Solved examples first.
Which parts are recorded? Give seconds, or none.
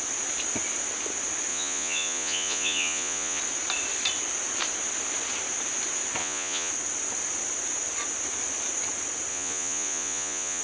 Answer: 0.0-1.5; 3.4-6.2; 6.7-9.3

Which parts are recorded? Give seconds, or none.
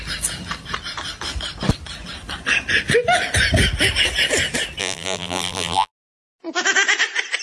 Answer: 0.0-4.8; 5.9-7.4